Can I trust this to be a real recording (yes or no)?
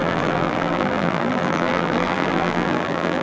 no